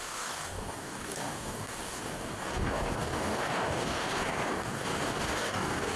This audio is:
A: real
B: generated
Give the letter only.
B